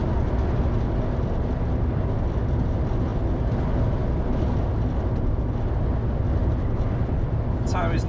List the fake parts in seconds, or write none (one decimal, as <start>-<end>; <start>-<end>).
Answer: 3.1-3.7; 6.4-7.3